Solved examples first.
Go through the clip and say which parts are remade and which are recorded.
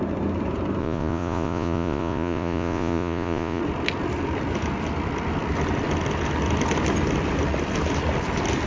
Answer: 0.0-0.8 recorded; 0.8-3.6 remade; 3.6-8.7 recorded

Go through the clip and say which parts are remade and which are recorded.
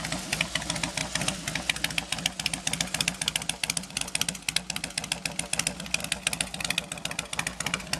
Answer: 0.0-8.0 recorded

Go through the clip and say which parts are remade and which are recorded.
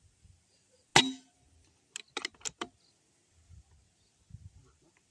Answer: 0.0-5.1 recorded